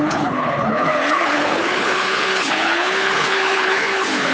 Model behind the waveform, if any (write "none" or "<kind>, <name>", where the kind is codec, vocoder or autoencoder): codec, HILCodec